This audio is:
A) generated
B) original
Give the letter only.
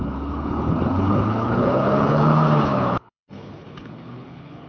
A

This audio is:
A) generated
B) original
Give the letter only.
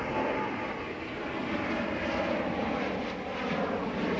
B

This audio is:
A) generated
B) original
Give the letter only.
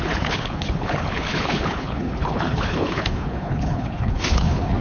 A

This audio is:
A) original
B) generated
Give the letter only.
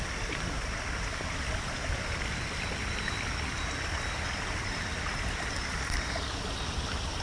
A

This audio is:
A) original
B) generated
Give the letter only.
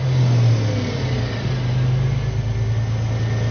A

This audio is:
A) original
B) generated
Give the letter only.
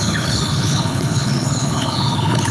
B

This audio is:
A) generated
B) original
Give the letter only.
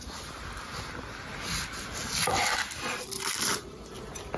B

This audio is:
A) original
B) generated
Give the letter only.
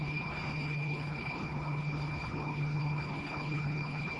B